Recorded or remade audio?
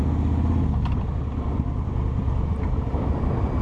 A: recorded